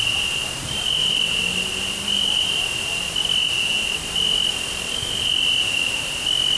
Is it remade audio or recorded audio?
recorded